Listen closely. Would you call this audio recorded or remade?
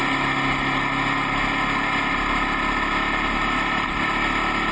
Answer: recorded